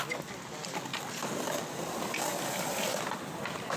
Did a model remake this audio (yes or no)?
no